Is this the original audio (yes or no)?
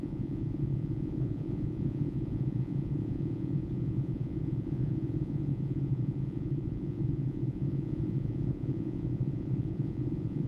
no